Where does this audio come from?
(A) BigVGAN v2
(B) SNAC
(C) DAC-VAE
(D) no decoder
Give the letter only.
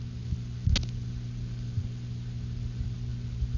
D